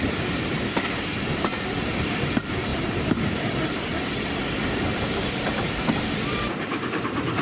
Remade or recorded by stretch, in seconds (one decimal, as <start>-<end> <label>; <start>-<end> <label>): 0.0-7.4 remade